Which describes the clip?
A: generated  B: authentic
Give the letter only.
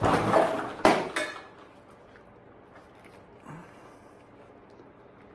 B